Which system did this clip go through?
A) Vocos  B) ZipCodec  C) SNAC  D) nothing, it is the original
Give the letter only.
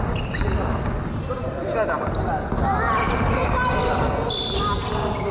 D